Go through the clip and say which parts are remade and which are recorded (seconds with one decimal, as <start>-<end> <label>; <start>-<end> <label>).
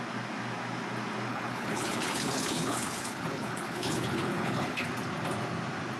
0.0-1.3 recorded; 1.3-4.9 remade; 4.9-6.0 recorded